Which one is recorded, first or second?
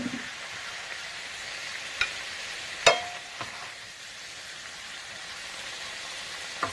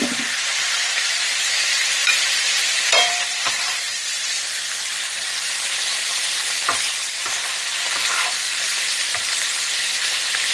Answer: first